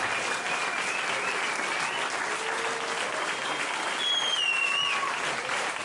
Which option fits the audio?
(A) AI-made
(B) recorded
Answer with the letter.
B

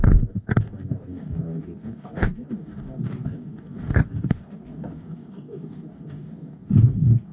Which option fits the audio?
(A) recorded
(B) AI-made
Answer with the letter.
B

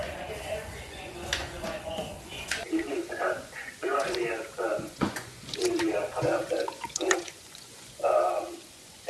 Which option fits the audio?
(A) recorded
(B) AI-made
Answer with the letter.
B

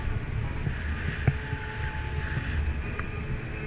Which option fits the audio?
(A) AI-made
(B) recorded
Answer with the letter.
B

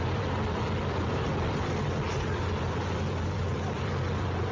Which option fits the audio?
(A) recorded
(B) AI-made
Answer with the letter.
B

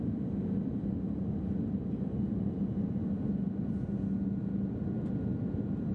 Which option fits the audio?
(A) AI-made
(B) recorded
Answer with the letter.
B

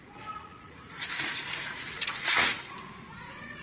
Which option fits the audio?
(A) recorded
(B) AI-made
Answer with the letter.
B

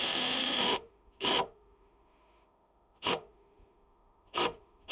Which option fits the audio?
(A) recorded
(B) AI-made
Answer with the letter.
B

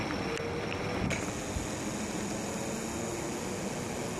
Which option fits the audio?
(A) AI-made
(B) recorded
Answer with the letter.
B